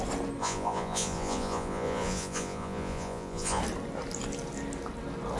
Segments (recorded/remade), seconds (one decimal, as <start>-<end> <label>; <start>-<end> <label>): 0.0-0.4 recorded; 0.4-3.6 remade; 3.6-5.4 recorded